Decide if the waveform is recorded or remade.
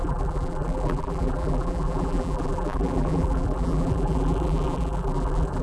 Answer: remade